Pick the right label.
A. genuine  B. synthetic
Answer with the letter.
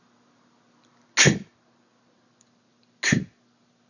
A